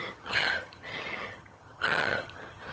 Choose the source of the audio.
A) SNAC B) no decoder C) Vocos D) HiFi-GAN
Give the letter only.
D